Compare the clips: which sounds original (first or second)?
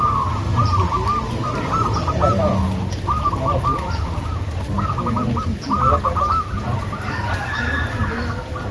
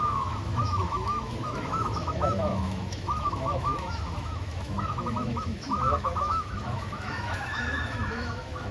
first